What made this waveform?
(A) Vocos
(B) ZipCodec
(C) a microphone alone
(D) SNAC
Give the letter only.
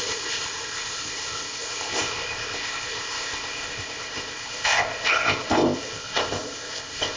B